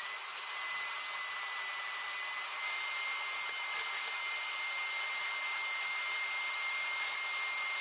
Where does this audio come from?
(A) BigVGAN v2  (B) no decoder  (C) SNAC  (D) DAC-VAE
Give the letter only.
B